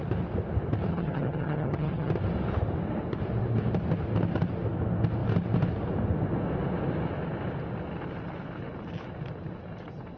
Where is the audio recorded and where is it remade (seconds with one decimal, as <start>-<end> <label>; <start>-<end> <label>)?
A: 0.0-0.9 recorded; 0.9-2.1 remade; 2.1-10.2 recorded